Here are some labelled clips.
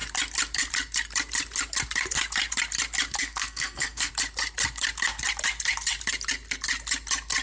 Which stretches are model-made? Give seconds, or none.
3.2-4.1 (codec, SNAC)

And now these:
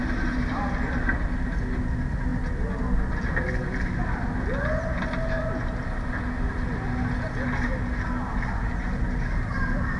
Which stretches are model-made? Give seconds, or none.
none